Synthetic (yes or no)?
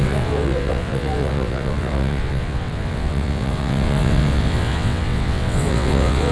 yes